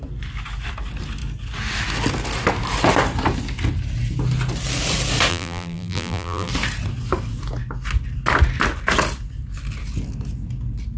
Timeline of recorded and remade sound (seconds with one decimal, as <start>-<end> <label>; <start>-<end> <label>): 0.0-5.3 recorded; 5.3-6.5 remade; 6.5-11.0 recorded